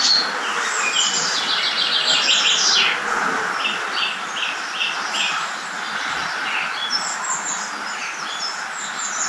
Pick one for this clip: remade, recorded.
recorded